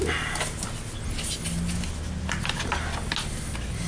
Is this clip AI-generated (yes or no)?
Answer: no